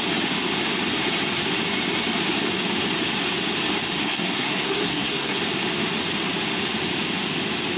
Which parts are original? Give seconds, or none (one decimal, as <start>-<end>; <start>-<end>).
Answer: 0.0-4.0; 5.4-7.8